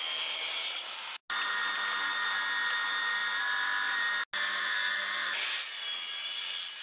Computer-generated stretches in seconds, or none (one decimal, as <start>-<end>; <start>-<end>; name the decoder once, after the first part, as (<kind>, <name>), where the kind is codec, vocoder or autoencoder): none